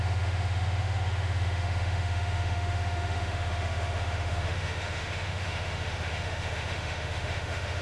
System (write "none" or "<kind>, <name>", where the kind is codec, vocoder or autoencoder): autoencoder, DAC-VAE